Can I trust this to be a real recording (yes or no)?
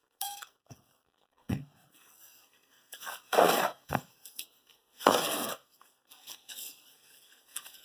no